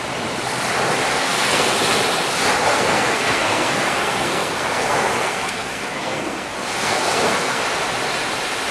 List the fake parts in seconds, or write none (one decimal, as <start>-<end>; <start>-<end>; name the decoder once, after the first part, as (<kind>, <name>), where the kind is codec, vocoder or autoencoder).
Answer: 1.1-1.8 (codec, SNAC); 2.7-7.6